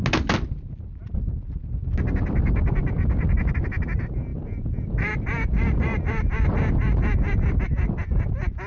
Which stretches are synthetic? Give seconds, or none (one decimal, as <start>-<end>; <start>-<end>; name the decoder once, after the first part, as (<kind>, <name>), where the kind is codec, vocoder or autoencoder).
none